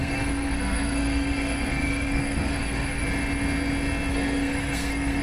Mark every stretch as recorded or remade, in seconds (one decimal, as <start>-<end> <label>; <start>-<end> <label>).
0.0-3.0 remade; 3.0-4.1 recorded; 4.1-5.2 remade